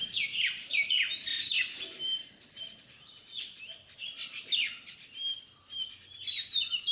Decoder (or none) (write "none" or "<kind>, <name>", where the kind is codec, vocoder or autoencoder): none